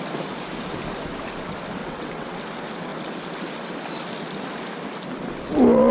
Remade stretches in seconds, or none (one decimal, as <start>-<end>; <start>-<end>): 1.8-2.4